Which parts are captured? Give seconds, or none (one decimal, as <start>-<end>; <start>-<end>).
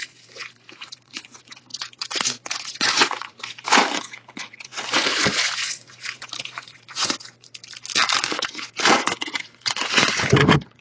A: 7.5-8.3